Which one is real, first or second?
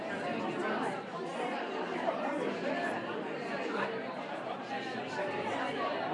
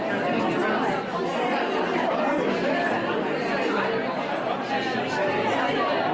second